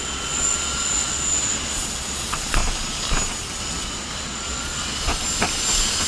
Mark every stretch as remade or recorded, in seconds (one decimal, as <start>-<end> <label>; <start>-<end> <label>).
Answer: 0.0-2.6 remade; 2.6-3.6 recorded; 3.6-5.1 remade; 5.1-6.1 recorded